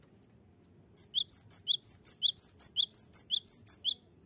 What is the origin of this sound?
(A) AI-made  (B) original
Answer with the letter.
B